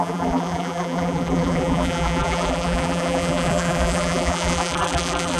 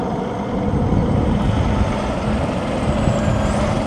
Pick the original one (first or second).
second